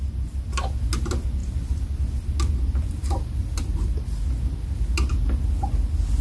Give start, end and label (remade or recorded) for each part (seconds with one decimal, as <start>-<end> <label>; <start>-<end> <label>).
0.0-6.2 recorded